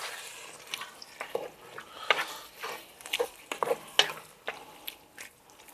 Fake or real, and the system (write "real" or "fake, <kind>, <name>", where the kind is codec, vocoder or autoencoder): real